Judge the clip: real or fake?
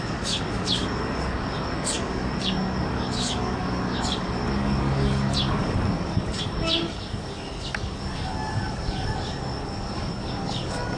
fake